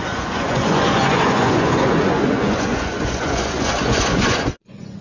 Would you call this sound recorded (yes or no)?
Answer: no